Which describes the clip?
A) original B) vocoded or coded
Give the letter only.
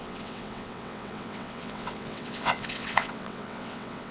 B